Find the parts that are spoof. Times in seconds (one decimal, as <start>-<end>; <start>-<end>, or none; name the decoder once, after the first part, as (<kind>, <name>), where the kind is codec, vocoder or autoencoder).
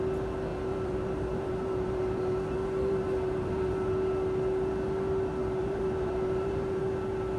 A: 0.5-3.9 (vocoder, BigVGAN v2); 5.6-6.8